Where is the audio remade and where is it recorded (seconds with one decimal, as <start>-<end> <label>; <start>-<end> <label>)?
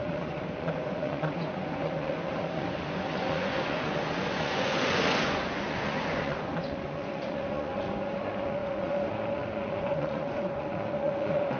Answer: 0.0-11.6 remade